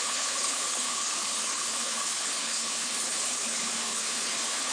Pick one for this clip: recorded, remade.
remade